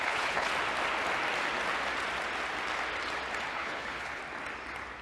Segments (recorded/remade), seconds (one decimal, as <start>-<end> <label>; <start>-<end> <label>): 0.0-0.5 remade; 0.5-3.5 recorded; 3.5-4.2 remade; 4.2-5.0 recorded